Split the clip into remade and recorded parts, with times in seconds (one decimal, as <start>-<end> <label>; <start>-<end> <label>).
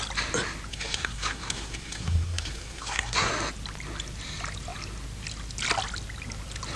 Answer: 0.0-0.7 recorded; 0.7-3.3 remade; 3.3-6.8 recorded